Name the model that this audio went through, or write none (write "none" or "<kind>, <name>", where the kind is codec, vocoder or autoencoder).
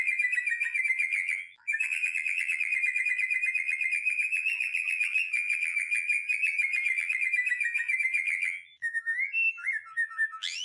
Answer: vocoder, BigVGAN v2